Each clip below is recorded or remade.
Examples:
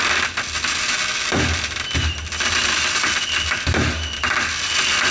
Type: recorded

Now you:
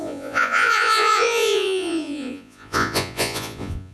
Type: remade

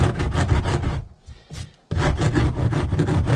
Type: recorded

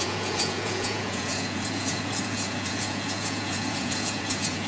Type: remade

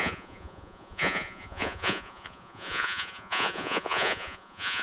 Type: remade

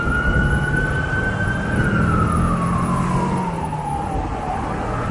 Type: recorded